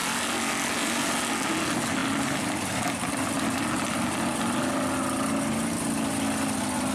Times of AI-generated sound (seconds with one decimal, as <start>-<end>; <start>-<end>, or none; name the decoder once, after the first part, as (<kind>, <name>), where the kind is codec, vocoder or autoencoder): none